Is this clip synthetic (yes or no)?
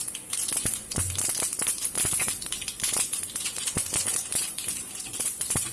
yes